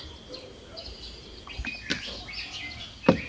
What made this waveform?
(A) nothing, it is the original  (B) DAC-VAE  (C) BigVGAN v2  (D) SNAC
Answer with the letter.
A